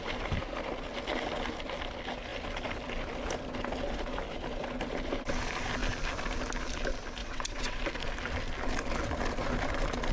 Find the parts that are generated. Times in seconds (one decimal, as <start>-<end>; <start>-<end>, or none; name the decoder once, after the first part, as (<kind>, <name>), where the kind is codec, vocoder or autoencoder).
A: 7.2-7.8 (vocoder, WaveNeXt)